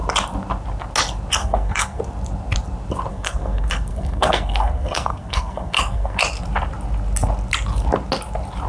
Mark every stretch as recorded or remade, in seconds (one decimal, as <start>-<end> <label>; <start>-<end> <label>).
0.0-1.4 recorded; 1.4-2.0 remade; 2.0-3.1 recorded; 3.1-6.2 remade; 6.2-8.7 recorded